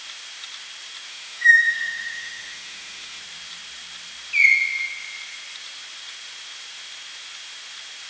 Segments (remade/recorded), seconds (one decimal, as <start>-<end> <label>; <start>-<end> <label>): 0.0-1.1 recorded; 1.1-3.2 remade; 3.2-8.1 recorded